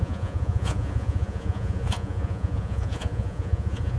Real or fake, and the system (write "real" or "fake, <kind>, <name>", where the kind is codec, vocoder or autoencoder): fake, vocoder, Vocos